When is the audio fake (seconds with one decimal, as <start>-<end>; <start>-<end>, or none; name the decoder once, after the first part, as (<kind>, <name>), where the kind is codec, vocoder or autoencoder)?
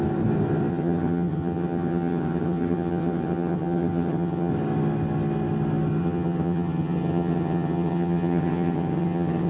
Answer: 0.7-4.5 (vocoder, HiFi-GAN); 6.0-9.5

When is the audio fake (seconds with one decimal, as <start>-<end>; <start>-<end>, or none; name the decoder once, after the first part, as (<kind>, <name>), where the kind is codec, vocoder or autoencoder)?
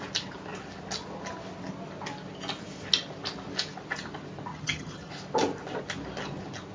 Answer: 4.5-5.1 (vocoder, HiFi-GAN)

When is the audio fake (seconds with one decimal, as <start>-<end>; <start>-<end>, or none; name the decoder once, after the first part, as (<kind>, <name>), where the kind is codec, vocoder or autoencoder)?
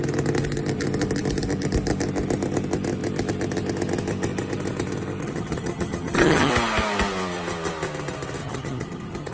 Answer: 5.2-6.5 (vocoder, HiFi-GAN); 8.4-9.3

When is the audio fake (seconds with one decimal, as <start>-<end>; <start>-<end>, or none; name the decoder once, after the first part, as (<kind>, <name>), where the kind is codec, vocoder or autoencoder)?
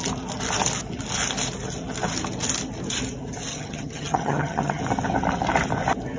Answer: 3.5-4.8 (vocoder, HiFi-GAN)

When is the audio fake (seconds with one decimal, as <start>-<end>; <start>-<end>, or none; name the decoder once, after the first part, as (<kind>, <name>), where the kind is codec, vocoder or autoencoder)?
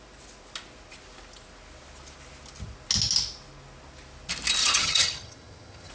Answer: 4.6-5.9 (vocoder, HiFi-GAN)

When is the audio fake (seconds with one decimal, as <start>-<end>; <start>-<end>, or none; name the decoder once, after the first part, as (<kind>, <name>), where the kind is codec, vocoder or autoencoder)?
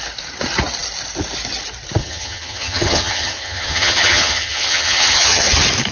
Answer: 2.0-5.5 (vocoder, HiFi-GAN)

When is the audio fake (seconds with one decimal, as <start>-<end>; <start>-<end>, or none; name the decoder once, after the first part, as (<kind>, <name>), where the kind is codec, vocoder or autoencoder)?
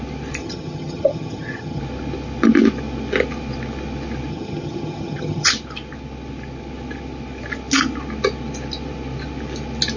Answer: 0.4-1.8 (vocoder, HiFi-GAN); 4.3-5.5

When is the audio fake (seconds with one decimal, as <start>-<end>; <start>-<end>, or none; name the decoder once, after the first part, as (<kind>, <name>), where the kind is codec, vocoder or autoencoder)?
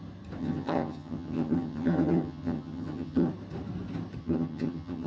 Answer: 0.4-3.3 (vocoder, HiFi-GAN); 4.2-5.1